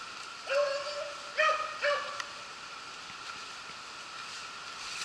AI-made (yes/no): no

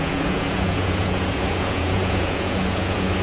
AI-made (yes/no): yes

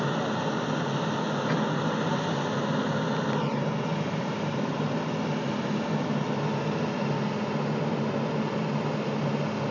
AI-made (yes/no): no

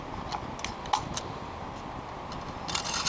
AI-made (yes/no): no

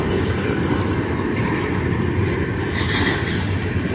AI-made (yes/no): no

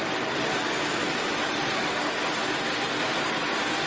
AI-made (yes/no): no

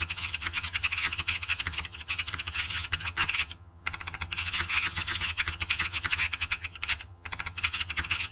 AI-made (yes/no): yes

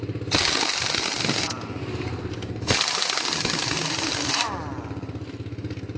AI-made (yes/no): no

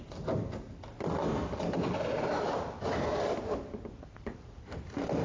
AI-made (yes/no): no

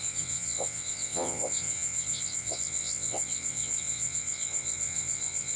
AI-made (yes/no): yes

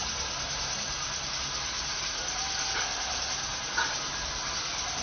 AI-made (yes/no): no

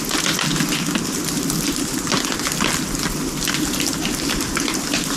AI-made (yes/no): no